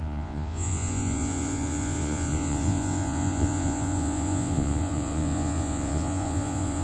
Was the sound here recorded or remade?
remade